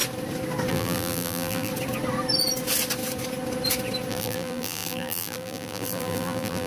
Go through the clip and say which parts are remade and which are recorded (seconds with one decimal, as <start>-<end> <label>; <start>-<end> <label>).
0.0-0.7 recorded; 0.7-1.7 remade; 1.7-4.1 recorded; 4.1-6.7 remade